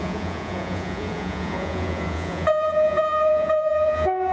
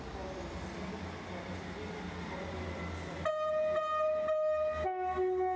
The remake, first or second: first